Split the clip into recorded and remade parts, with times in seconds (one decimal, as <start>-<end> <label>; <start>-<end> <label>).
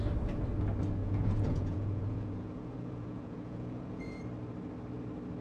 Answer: 0.0-1.0 recorded; 1.0-4.2 remade; 4.2-5.4 recorded